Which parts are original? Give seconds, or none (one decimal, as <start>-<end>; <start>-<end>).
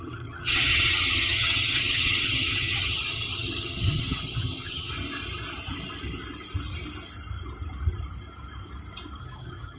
4.9-9.2